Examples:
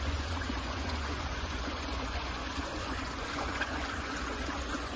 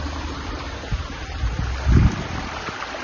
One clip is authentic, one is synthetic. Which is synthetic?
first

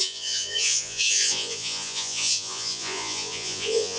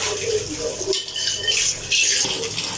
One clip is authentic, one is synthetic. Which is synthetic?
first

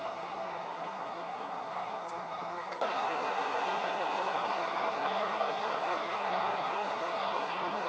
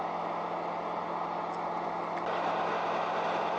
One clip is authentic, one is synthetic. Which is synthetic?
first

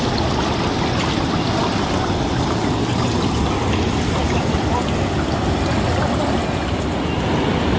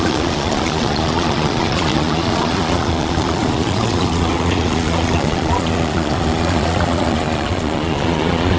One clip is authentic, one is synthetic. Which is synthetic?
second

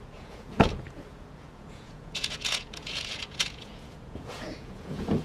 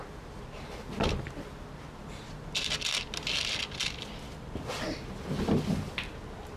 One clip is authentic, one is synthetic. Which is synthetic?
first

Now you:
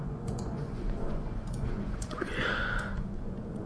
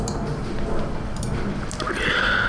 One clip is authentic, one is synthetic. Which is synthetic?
first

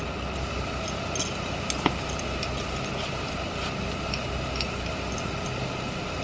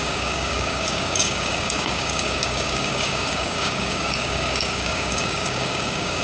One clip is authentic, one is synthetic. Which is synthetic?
second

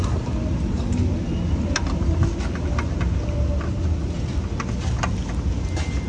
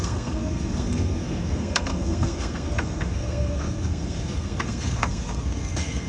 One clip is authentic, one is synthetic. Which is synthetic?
second